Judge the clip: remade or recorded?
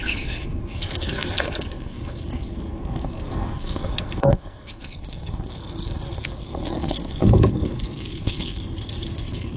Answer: remade